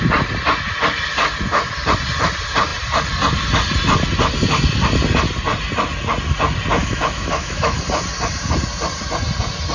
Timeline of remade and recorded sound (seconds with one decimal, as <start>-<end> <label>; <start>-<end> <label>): 0.0-6.8 recorded; 6.8-7.8 remade; 7.8-9.7 recorded

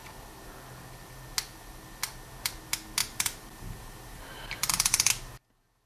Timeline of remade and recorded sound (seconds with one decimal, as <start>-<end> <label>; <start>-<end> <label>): 0.0-3.0 recorded; 3.0-5.1 remade; 5.1-5.9 recorded

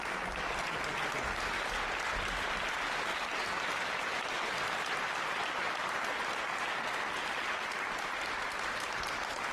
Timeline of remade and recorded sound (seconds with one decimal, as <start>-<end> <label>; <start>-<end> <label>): 0.0-9.5 recorded

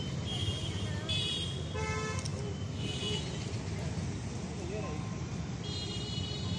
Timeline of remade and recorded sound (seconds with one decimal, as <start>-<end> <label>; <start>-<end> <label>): 0.0-6.6 recorded